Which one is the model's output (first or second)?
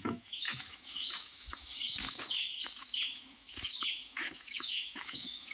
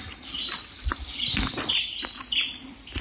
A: first